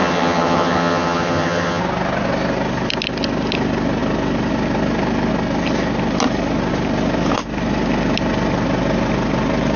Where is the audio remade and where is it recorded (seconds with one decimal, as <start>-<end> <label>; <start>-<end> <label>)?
0.0-1.8 remade; 1.8-9.8 recorded

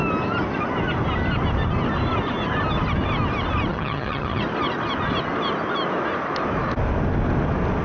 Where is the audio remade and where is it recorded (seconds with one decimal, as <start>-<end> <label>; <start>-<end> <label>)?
0.0-3.7 recorded; 3.7-4.4 remade; 4.4-7.8 recorded

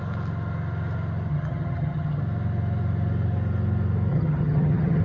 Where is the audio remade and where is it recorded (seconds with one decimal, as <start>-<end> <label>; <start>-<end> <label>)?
0.0-1.3 recorded; 1.3-2.2 remade; 2.2-4.1 recorded; 4.1-5.0 remade

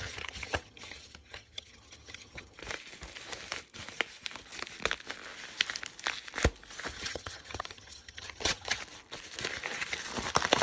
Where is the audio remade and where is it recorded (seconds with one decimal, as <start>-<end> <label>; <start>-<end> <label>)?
0.0-2.6 remade; 2.6-6.9 recorded; 6.9-8.8 remade; 8.8-10.6 recorded